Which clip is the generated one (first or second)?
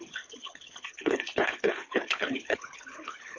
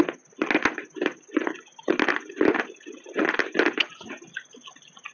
first